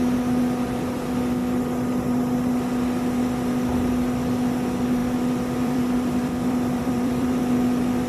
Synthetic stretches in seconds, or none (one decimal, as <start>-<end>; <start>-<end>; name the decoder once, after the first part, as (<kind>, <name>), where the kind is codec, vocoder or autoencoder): 5.0-7.4 (vocoder, BigVGAN v2)